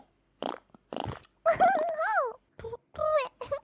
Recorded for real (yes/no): yes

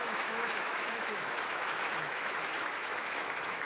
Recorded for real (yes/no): no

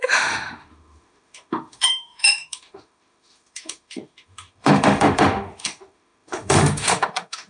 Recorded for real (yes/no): no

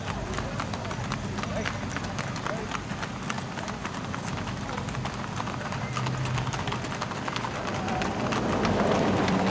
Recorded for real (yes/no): yes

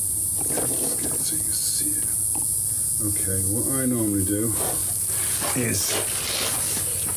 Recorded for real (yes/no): yes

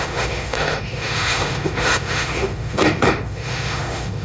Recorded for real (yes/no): no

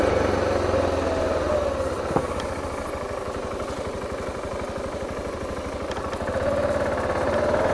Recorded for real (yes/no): yes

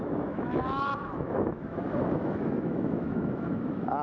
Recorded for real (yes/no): no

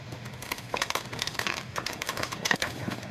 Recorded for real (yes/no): no